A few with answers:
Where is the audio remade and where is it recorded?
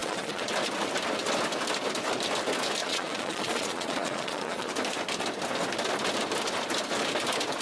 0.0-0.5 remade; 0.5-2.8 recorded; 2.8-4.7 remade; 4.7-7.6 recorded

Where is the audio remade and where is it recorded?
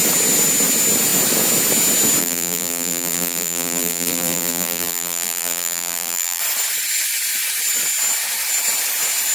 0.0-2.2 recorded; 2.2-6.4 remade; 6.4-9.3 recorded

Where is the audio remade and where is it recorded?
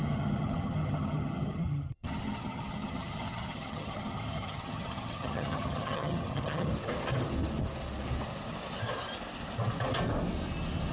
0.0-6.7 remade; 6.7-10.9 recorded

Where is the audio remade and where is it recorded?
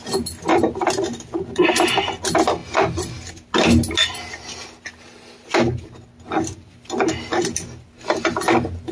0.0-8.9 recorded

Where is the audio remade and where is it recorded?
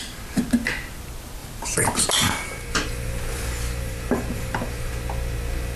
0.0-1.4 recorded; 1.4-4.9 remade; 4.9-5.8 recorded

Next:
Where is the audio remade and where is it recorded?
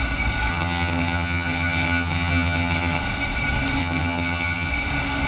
0.0-0.5 recorded; 0.5-3.0 remade; 3.0-3.8 recorded; 3.8-4.7 remade; 4.7-5.3 recorded